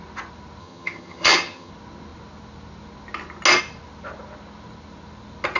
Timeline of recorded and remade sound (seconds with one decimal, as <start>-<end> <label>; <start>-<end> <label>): 0.0-0.6 recorded; 0.6-1.7 remade; 1.7-5.6 recorded